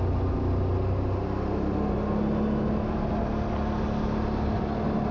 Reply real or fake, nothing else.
real